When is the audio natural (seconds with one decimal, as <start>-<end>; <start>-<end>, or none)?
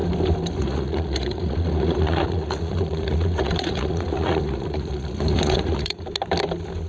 0.0-0.6; 6.1-6.9